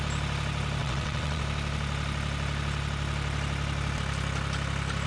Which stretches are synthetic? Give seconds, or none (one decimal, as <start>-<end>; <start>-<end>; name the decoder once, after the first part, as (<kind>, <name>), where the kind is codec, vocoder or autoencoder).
0.8-1.4 (vocoder, WaveNeXt)